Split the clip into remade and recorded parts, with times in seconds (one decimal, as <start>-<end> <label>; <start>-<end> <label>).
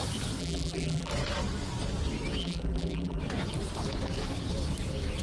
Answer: 0.0-0.4 recorded; 0.4-1.1 remade; 1.1-2.4 recorded; 2.4-3.2 remade; 3.2-5.2 recorded